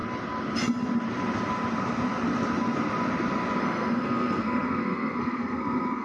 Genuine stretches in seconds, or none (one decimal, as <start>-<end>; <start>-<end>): 0.0-3.6